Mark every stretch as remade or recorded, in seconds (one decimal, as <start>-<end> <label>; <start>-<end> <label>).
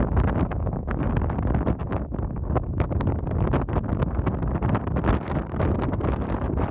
0.0-0.4 recorded; 0.4-1.0 remade; 1.0-6.7 recorded